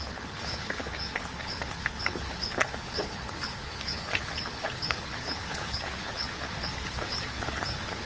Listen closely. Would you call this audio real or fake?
fake